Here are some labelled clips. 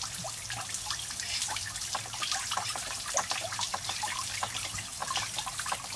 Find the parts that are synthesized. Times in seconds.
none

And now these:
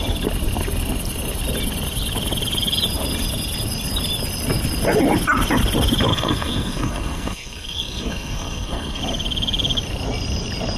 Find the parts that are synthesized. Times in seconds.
6.1-9.0

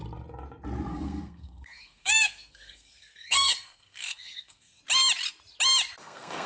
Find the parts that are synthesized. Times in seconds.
0.9-4.8; 6.0-6.5